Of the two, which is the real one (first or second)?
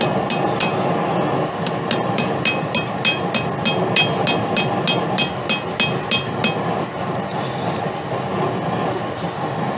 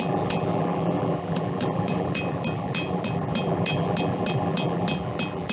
first